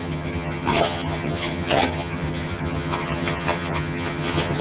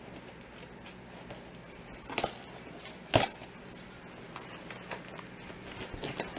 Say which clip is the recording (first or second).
second